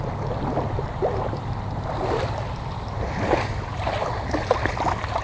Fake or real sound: real